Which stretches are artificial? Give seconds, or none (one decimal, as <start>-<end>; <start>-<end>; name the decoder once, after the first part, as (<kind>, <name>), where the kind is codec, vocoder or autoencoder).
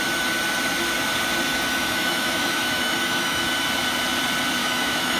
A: 1.5-3.5 (autoencoder, DAC-VAE); 4.6-5.2